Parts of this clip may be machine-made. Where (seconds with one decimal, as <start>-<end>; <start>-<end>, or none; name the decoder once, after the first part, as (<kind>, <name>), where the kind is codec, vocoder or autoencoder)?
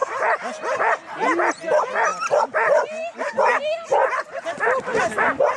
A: 0.0-1.5 (vocoder, BigVGAN v2); 2.1-5.0